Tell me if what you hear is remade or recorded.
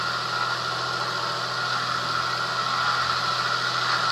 recorded